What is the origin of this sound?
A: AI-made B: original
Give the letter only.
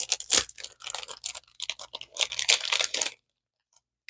B